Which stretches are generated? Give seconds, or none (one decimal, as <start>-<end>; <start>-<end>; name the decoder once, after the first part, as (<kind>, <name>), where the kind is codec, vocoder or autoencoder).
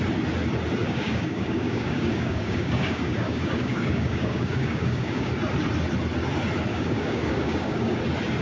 0.8-5.3 (codec, DAC); 6.7-8.0